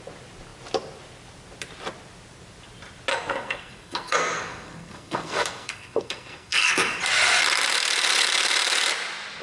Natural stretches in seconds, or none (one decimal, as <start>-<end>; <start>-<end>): 0.0-3.1; 7.0-9.4